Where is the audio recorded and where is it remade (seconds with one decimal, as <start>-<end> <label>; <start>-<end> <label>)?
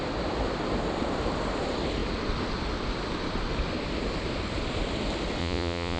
0.0-5.4 recorded; 5.4-6.0 remade